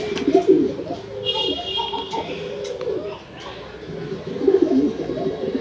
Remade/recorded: recorded